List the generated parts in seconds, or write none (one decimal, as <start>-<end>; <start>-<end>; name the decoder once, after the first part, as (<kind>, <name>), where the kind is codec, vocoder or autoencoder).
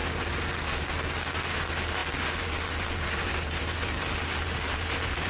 none